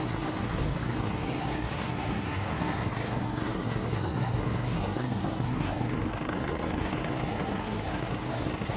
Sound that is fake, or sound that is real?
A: fake